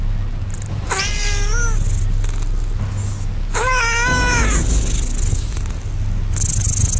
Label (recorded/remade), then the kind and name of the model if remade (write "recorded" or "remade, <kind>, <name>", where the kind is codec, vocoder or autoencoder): recorded